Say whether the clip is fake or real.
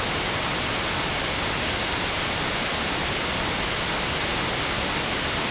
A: real